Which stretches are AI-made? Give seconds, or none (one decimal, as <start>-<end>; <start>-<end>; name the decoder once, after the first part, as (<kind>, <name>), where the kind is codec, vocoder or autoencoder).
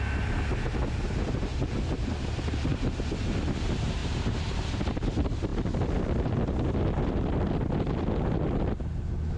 1.5-2.1 (vocoder, BigVGAN v2); 2.7-3.3; 4.0-5.1